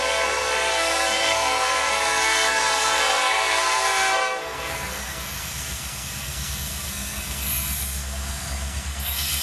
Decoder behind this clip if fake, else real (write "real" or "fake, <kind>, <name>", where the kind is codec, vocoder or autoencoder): fake, codec, SNAC